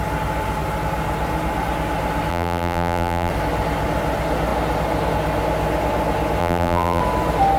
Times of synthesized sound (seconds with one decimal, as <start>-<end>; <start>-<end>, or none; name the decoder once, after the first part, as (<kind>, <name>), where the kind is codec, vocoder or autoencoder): 2.3-3.3 (vocoder, BigVGAN v2); 6.4-7.0